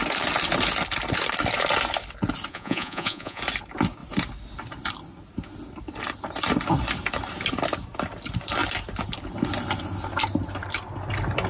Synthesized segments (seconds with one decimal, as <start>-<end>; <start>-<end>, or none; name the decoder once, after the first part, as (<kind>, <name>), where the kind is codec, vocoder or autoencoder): 2.5-3.4 (vocoder, Vocos)